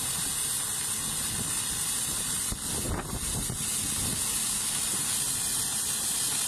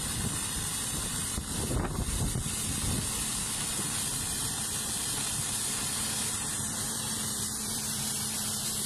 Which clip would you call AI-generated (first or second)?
second